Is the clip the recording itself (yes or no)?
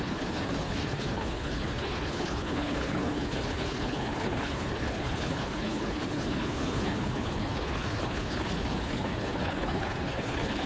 no